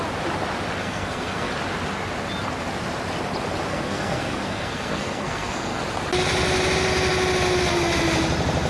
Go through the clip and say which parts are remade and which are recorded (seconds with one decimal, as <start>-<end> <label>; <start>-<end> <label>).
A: 0.0-0.8 recorded; 0.8-1.5 remade; 1.5-3.7 recorded; 3.7-5.8 remade; 5.8-8.7 recorded